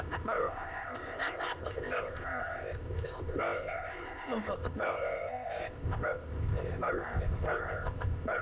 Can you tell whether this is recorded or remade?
remade